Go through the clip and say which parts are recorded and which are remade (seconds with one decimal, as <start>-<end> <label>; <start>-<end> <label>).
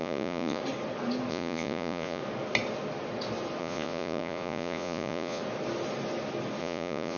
0.0-0.6 remade; 0.6-1.3 recorded; 1.3-2.2 remade; 2.2-3.6 recorded; 3.6-5.4 remade; 5.4-6.6 recorded; 6.6-7.2 remade